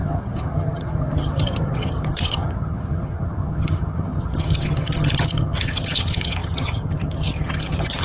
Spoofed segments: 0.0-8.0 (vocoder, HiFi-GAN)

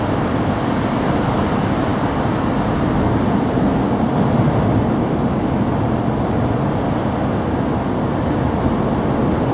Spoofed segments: none

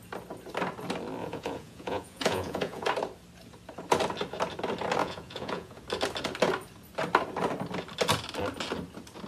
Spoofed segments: 1.2-2.9 (vocoder, Vocos); 5.0-5.8

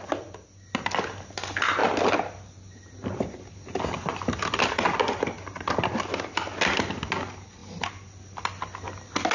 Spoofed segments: none

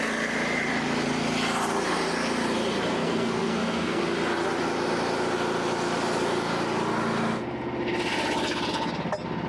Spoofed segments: 3.0-4.0 (codec, SNAC)

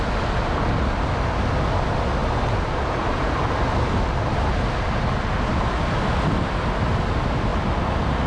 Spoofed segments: none

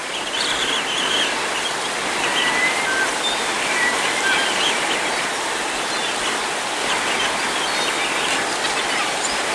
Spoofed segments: 0.0-9.5 (vocoder, BigVGAN v2)

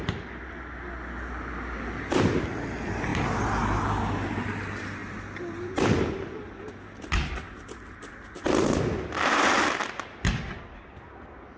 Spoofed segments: none